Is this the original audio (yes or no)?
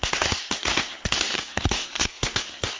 no